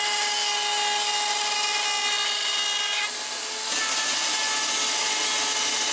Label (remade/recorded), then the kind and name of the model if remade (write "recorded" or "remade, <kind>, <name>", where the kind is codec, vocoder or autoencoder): recorded